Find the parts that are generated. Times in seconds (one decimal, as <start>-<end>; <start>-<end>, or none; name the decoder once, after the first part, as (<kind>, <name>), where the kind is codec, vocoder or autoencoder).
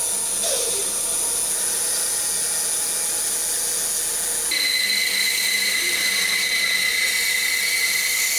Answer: 5.4-6.7 (vocoder, BigVGAN v2)